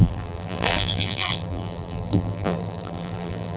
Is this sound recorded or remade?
remade